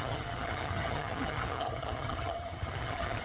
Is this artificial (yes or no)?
yes